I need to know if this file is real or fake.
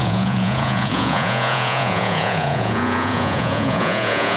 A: fake